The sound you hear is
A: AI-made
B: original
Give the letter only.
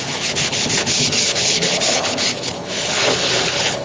A